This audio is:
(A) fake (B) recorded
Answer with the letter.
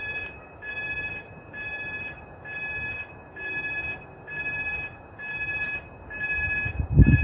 B